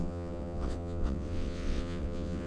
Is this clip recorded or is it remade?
remade